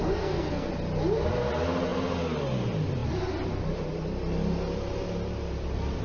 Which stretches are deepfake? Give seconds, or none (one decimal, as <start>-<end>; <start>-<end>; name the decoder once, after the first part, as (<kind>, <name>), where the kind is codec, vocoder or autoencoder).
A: 0.0-0.7 (codec, SNAC)

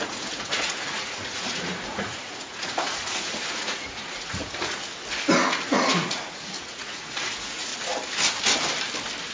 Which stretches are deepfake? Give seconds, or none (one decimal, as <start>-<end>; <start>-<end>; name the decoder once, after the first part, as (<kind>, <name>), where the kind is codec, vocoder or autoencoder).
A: 0.0-4.9 (vocoder, Vocos); 5.6-7.7

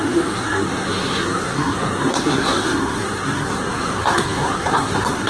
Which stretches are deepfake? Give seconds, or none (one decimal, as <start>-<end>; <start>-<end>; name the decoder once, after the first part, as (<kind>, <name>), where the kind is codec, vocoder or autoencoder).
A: 0.0-5.3 (codec, SNAC)

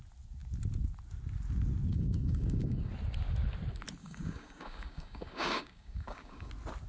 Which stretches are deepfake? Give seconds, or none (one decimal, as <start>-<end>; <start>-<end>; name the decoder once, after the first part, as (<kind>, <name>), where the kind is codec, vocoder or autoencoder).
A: 1.9-2.9 (codec, DAC); 4.0-6.5

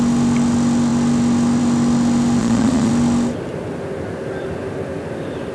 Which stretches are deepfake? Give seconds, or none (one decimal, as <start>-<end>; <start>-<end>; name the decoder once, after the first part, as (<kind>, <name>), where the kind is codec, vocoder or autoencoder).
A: 2.4-2.9 (vocoder, Vocos)